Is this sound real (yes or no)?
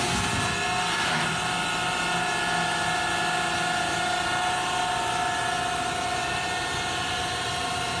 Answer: yes